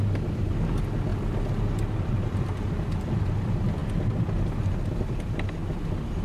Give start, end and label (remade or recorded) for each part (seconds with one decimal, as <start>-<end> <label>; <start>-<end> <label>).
0.0-6.2 recorded